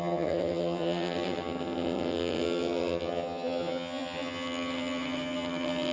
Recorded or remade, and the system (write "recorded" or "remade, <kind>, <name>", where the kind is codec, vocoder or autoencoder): remade, vocoder, HiFi-GAN